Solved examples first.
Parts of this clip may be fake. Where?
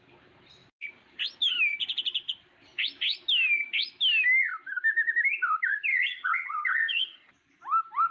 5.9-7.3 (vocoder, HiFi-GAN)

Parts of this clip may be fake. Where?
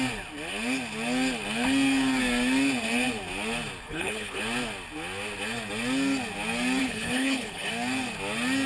3.8-4.4 (codec, HILCodec); 6.8-7.7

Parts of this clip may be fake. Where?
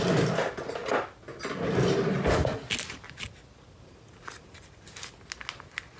none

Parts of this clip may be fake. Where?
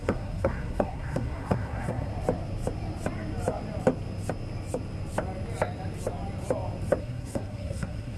0.0-2.1 (codec, SNAC); 7.0-8.2